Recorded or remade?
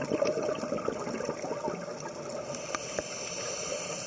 recorded